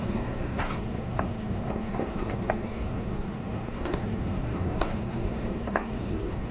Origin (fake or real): fake